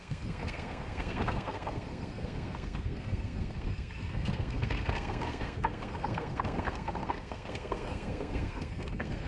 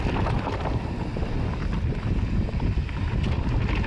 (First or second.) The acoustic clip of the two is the second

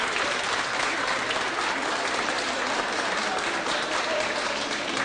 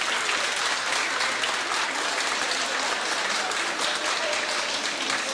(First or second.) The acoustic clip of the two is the second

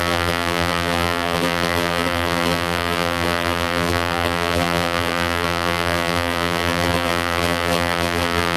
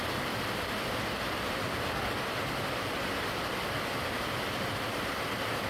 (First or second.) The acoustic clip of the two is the second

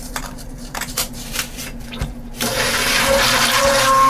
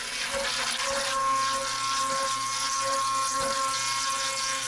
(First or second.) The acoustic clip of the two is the second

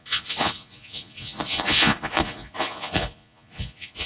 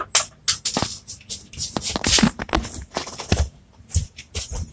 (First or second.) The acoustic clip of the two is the second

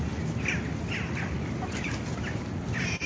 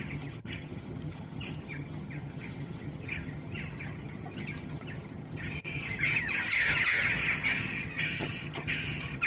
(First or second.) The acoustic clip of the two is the first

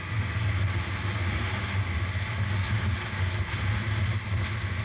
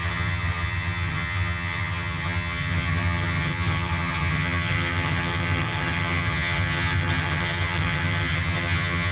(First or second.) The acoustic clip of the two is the first